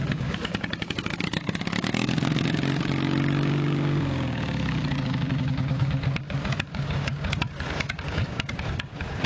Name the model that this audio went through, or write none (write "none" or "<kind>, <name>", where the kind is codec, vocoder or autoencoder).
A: codec, DAC